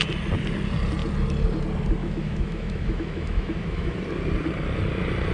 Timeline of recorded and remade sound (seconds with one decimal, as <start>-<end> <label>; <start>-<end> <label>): 0.0-2.0 recorded; 2.0-4.0 remade; 4.0-5.3 recorded